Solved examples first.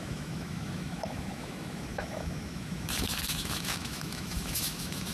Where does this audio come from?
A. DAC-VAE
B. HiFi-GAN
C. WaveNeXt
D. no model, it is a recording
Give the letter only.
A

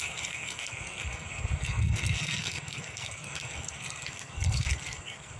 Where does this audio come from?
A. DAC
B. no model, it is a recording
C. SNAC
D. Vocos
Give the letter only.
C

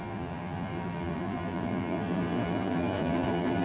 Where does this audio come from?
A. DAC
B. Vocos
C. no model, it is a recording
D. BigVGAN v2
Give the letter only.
D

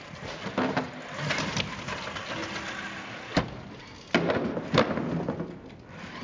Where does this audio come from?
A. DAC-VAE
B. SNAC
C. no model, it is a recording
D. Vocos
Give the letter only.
C